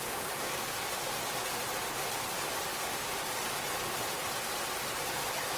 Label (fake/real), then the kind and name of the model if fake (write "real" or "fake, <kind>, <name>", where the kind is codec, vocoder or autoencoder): real